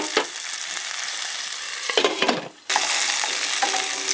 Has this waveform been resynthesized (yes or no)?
no